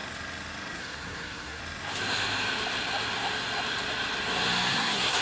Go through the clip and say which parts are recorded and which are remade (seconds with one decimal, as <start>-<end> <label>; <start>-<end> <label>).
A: 0.0-0.8 recorded; 0.8-1.6 remade; 1.6-4.7 recorded; 4.7-5.2 remade